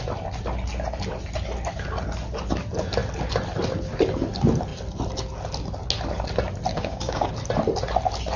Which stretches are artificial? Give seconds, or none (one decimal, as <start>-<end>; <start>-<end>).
6.7-7.3